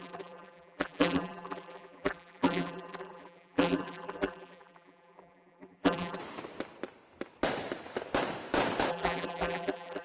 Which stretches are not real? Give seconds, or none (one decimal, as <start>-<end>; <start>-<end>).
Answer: 0.0-6.2; 8.9-10.0